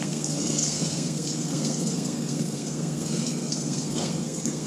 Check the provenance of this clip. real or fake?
fake